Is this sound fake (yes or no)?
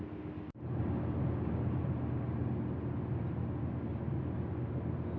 no